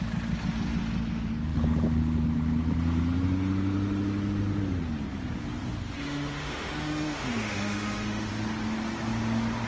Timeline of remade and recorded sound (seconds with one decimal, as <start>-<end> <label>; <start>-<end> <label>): 0.0-6.0 recorded; 6.0-8.3 remade; 8.3-9.7 recorded